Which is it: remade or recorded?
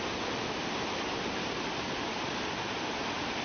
remade